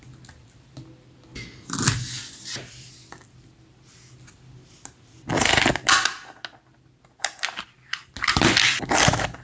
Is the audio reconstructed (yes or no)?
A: no